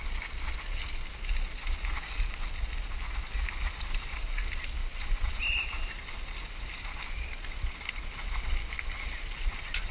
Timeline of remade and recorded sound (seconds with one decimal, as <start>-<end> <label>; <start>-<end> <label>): 0.0-4.8 recorded; 4.8-5.4 remade; 5.4-9.9 recorded